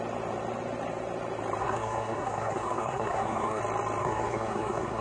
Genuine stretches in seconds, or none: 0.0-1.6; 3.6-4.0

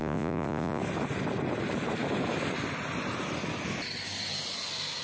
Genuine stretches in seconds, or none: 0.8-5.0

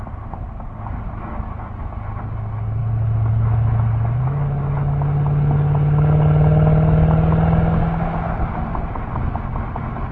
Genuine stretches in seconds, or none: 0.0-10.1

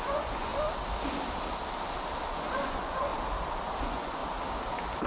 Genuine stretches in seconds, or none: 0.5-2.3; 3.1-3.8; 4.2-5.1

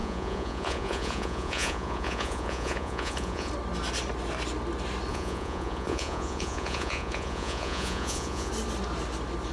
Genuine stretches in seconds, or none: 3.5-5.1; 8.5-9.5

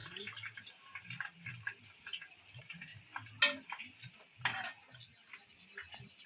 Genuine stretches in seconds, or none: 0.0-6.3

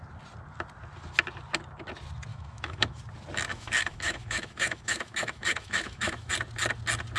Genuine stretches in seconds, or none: 0.0-2.3; 3.0-3.5; 6.3-7.2